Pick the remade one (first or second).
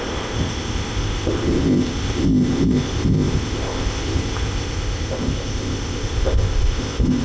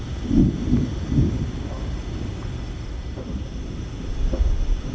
first